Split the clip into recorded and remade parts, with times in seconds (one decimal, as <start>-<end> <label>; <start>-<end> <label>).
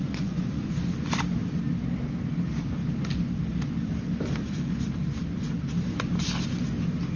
0.0-0.6 remade; 0.6-7.2 recorded